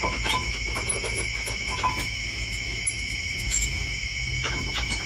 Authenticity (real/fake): fake